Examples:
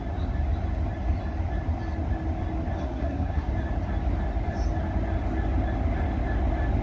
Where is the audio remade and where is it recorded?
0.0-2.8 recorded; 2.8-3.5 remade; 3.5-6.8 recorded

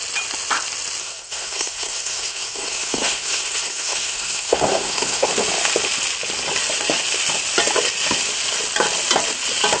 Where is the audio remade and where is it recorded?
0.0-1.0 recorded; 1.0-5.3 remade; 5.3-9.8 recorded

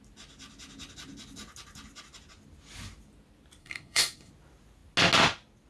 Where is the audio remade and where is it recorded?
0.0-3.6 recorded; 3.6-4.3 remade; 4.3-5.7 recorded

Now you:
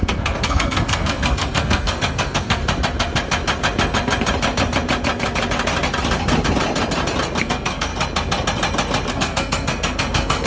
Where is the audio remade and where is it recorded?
0.0-2.6 remade; 2.6-7.4 recorded; 7.4-7.9 remade; 7.9-9.1 recorded; 9.1-10.5 remade

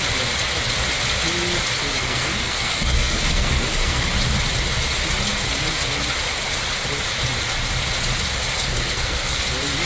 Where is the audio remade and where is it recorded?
0.0-2.0 recorded; 2.0-4.1 remade; 4.1-8.7 recorded; 8.7-9.4 remade; 9.4-9.9 recorded

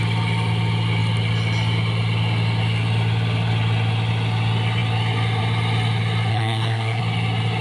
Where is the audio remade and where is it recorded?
0.0-6.3 recorded; 6.3-7.0 remade; 7.0-7.6 recorded

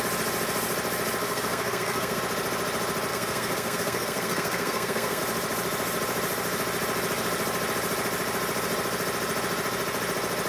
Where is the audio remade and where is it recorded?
0.0-1.2 recorded; 1.2-2.2 remade; 2.2-3.1 recorded; 3.1-5.2 remade; 5.2-10.5 recorded